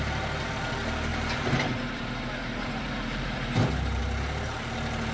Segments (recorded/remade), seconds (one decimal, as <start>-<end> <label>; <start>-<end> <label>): 0.0-1.1 recorded; 1.1-4.0 remade; 4.0-5.1 recorded

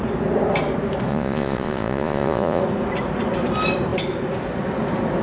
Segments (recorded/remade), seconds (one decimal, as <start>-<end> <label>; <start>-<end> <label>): 0.0-1.1 recorded; 1.1-2.6 remade; 2.6-5.2 recorded